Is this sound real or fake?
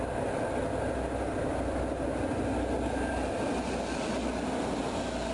real